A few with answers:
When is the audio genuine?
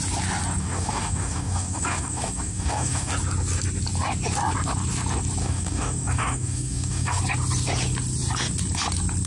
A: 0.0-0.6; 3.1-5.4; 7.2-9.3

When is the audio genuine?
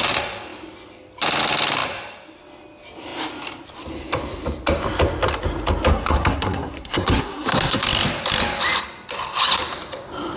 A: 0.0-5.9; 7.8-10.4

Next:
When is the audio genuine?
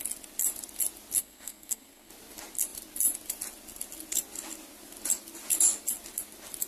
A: 0.0-1.2; 2.1-6.7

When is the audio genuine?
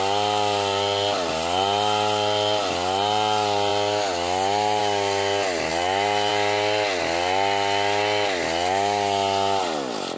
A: 0.0-10.2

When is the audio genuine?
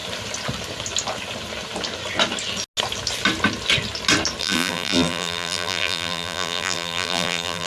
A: 0.0-4.4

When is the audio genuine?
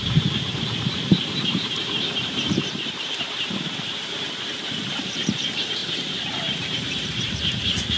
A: none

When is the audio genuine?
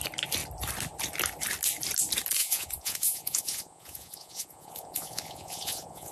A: 0.0-2.4